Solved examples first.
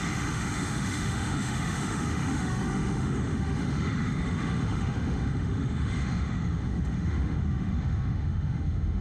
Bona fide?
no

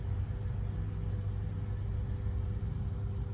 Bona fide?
yes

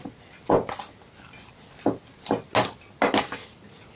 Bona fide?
yes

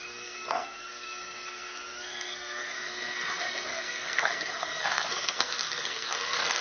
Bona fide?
no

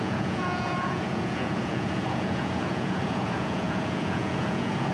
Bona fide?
no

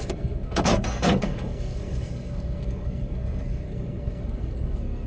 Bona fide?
no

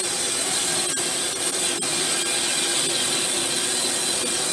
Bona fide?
yes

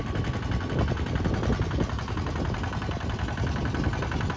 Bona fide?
yes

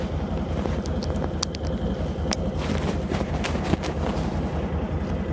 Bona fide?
yes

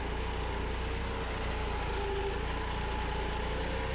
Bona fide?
yes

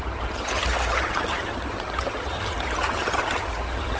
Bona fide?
no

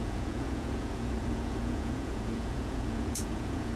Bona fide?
no